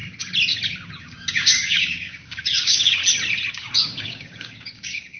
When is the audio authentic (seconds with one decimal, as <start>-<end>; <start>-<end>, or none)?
0.0-1.0; 3.0-3.5